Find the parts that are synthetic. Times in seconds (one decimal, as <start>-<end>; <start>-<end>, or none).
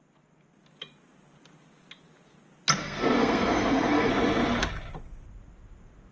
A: 2.8-4.1